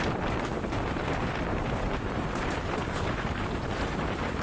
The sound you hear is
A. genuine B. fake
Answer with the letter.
B